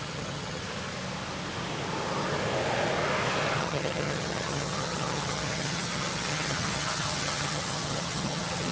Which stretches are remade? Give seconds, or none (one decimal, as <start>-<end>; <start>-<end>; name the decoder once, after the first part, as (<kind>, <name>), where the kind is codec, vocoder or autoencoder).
0.0-0.6 (vocoder, HiFi-GAN); 3.6-8.7